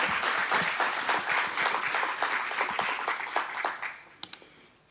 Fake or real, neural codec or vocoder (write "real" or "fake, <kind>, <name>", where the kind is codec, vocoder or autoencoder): real